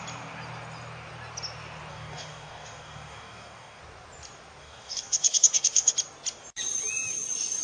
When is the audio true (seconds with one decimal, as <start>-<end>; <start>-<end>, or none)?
0.0-1.9; 3.8-4.6; 5.9-7.6